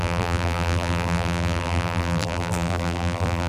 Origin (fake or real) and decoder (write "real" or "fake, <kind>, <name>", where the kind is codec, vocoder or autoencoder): fake, vocoder, BigVGAN v2